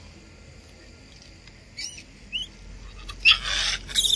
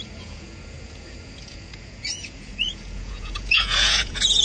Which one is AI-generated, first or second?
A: second